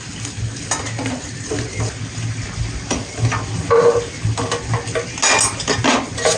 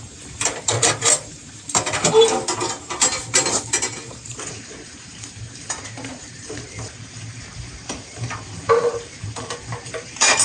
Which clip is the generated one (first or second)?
second